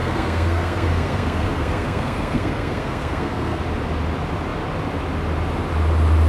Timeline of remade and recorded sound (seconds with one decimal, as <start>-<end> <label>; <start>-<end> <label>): 0.0-3.6 remade; 3.6-6.3 recorded